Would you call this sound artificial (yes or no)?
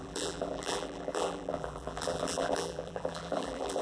yes